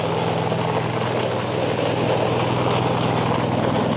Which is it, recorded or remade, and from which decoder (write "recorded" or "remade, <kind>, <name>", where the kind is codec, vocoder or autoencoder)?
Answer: recorded